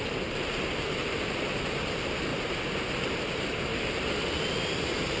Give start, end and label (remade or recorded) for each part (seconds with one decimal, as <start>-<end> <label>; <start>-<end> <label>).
0.0-2.3 remade; 2.3-2.8 recorded; 2.8-3.7 remade; 3.7-4.8 recorded; 4.8-5.2 remade